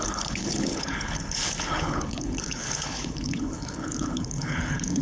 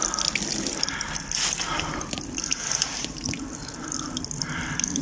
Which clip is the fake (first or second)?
first